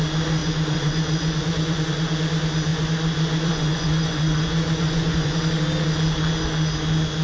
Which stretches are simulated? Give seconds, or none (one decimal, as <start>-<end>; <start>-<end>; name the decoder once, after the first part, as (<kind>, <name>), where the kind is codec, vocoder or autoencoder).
0.4-2.1 (vocoder, Vocos); 2.7-5.5